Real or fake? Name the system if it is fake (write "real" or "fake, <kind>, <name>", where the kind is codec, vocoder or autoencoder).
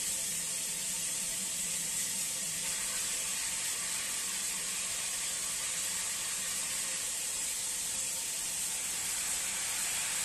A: real